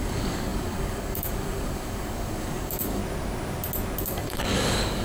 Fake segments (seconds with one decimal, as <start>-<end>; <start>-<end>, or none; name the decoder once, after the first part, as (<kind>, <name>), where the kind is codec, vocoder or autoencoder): 0.0-3.0 (codec, DAC); 4.0-5.0